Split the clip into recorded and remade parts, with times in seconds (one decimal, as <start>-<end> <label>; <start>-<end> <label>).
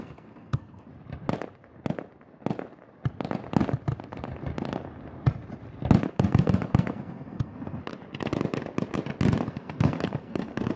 0.0-0.9 remade; 0.9-6.1 recorded; 6.1-7.9 remade; 7.9-9.5 recorded; 9.5-10.8 remade